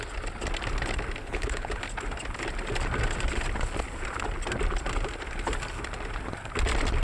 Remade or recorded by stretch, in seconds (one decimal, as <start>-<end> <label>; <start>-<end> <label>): 0.0-1.2 recorded; 1.2-1.8 remade; 1.8-7.0 recorded